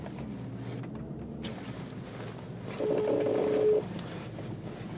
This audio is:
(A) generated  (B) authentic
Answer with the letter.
B